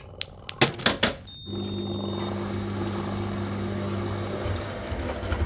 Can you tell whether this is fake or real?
real